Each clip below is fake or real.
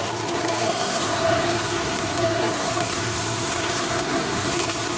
fake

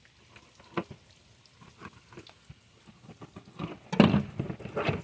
real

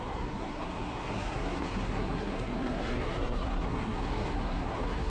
fake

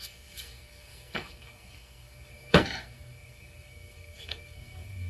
fake